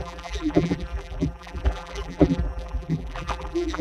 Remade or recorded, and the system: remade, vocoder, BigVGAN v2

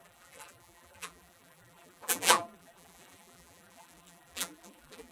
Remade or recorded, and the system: remade, vocoder, BigVGAN v2